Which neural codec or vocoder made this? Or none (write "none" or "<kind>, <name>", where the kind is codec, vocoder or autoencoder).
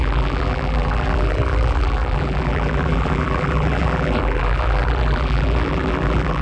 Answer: vocoder, BigVGAN v2